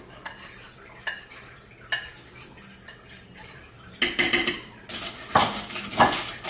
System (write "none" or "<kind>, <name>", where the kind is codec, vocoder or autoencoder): none